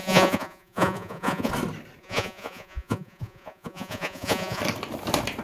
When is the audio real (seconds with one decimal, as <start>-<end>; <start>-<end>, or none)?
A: 1.5-2.0; 4.6-5.4